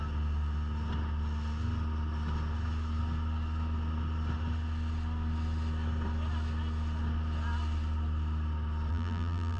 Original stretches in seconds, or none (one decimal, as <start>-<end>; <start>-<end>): 0.0-8.9